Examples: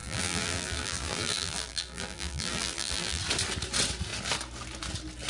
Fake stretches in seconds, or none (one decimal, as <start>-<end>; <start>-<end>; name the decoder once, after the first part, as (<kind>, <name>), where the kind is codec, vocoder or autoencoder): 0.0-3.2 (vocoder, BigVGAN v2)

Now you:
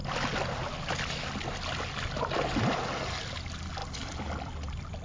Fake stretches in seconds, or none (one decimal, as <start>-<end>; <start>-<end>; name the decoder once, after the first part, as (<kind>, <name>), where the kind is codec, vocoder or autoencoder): none

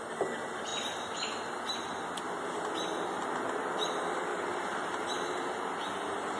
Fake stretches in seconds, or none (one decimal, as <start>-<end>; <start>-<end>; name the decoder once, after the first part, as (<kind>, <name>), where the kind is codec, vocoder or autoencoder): 4.3-5.7 (vocoder, BigVGAN v2)